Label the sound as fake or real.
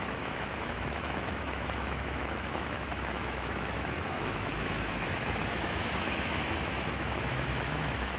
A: fake